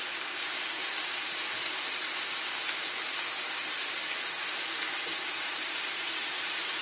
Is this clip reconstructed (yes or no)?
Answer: yes